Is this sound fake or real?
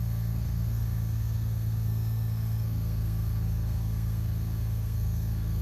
fake